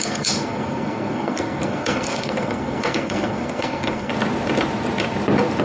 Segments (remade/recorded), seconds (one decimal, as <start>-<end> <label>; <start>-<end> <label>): 0.0-4.1 remade; 4.1-5.6 recorded